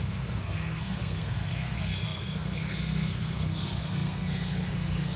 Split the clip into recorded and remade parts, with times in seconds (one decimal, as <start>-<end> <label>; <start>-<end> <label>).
0.0-5.2 remade